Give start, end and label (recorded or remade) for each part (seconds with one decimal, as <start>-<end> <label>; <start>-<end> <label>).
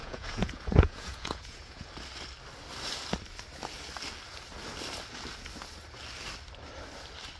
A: 0.0-1.9 remade; 1.9-7.4 recorded